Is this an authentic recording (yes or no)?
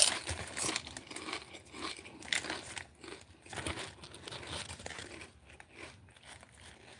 yes